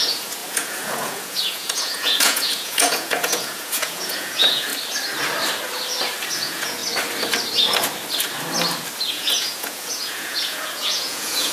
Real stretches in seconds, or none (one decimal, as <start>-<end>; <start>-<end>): 4.7-6.3; 6.8-9.1